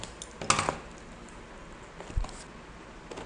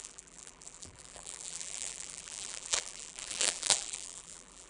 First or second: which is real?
first